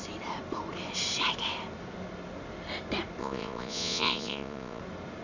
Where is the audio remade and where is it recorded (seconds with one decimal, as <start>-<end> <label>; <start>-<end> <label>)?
0.0-3.2 recorded; 3.2-4.8 remade; 4.8-5.2 recorded